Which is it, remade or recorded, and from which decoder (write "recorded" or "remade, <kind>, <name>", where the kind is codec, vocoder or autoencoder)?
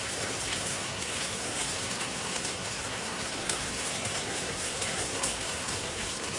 remade, codec, SNAC